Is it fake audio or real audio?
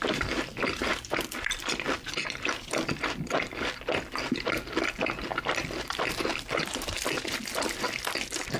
fake